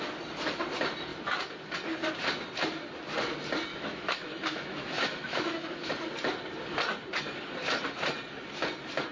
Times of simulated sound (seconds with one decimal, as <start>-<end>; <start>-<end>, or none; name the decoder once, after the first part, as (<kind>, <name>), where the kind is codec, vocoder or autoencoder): 3.7-5.9 (autoencoder, DAC-VAE)